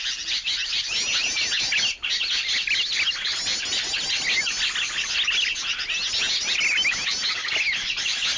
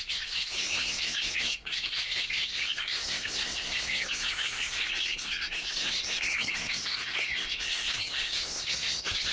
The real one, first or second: first